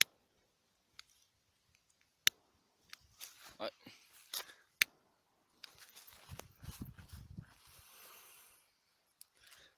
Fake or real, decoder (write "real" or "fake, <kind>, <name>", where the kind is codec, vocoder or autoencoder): real